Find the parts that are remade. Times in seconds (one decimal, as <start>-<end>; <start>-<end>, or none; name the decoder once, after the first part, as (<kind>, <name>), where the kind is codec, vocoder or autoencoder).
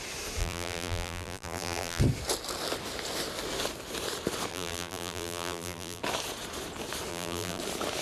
0.4-2.0 (vocoder, BigVGAN v2); 4.5-6.0; 7.1-7.6